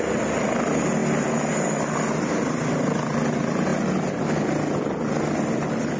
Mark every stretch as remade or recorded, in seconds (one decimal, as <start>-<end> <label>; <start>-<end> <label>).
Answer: 0.0-6.0 recorded